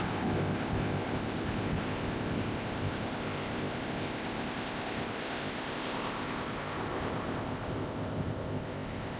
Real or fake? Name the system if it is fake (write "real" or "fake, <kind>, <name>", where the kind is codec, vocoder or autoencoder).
fake, codec, ZipCodec